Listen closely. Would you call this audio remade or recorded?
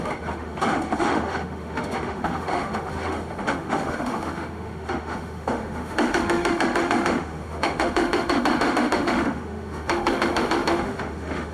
remade